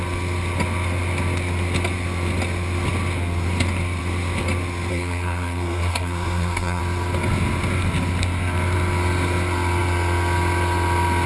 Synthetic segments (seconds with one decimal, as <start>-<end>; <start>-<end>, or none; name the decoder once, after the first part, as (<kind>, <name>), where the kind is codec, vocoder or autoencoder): 4.9-6.8 (codec, SNAC)

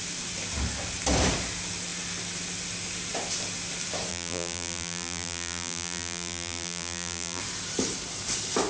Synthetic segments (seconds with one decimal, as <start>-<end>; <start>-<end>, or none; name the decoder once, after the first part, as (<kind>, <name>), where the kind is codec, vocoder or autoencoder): 4.1-7.4 (vocoder, BigVGAN v2)

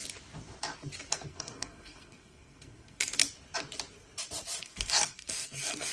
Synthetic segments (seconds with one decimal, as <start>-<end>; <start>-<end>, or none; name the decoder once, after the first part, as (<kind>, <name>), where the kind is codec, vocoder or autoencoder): 1.1-3.2 (codec, SNAC); 4.6-5.9

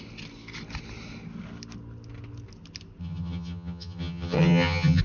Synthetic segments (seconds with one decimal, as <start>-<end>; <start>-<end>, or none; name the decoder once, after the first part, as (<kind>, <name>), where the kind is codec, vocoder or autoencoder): 3.0-5.0 (vocoder, HiFi-GAN)

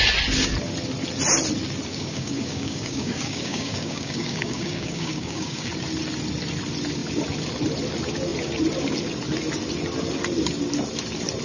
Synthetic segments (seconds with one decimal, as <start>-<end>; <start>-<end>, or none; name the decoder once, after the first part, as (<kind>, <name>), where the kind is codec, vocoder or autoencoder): 1.9-5.7 (codec, DAC)

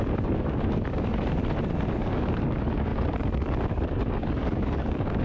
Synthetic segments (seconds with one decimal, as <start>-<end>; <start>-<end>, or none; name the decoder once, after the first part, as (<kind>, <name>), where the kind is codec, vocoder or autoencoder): 0.0-1.4 (codec, DAC); 1.9-5.2